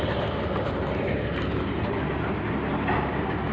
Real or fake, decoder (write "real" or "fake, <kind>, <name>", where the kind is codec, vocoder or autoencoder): real